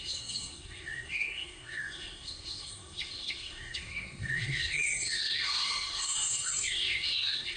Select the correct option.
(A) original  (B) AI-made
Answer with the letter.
B